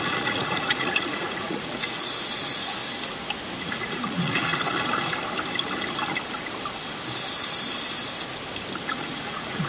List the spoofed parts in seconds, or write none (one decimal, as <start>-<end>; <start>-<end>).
0.0-2.8; 3.6-4.5; 8.9-9.7